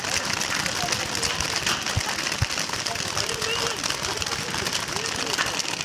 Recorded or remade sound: recorded